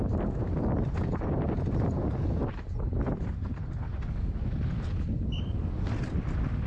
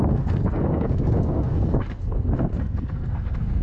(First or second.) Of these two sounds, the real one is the first